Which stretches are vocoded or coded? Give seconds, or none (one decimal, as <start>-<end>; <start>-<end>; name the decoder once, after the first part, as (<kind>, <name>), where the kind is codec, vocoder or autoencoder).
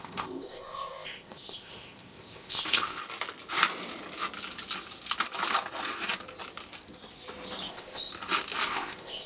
0.0-3.0 (codec, ZipCodec); 7.7-8.1; 8.7-9.3